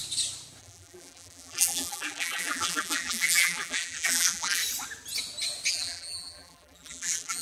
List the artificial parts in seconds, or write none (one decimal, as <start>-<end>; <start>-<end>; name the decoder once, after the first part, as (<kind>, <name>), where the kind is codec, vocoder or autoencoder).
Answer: 0.6-4.6 (vocoder, BigVGAN v2); 5.7-7.4